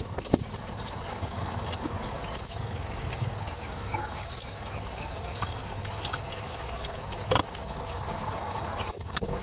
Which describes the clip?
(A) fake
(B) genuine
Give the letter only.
A